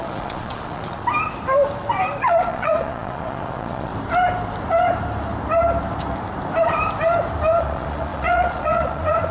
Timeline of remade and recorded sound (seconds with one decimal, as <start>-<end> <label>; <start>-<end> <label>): 0.0-1.0 remade; 1.0-2.2 recorded; 2.2-3.9 remade; 3.9-7.6 recorded; 7.6-9.3 remade